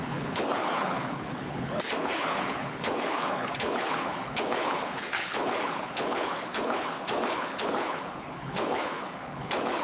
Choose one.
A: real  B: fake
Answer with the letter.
B